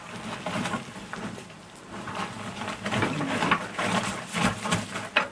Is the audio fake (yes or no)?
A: no